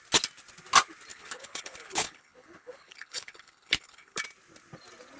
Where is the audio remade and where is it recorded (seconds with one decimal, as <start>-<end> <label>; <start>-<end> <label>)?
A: 0.0-1.1 recorded; 1.1-4.2 remade; 4.2-5.2 recorded